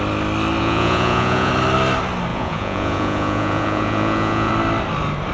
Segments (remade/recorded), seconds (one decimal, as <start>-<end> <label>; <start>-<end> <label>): 0.0-0.6 recorded; 0.6-1.5 remade; 1.5-2.3 recorded; 2.3-4.5 remade; 4.5-5.3 recorded